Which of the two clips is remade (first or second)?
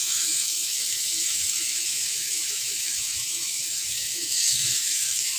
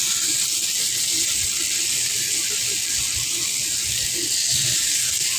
first